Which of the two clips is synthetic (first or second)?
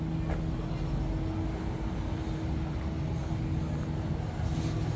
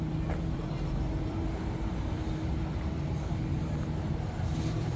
second